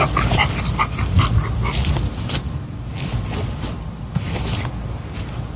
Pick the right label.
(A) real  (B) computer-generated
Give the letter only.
A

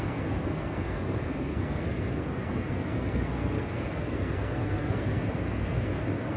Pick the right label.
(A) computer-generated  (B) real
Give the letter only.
A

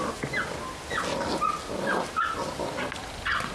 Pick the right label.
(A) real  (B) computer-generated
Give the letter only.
A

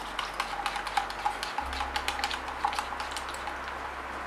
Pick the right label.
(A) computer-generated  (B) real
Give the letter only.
B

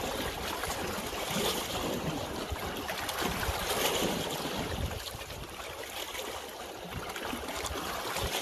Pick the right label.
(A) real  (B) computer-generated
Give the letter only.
A